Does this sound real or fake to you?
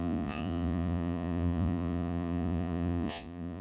fake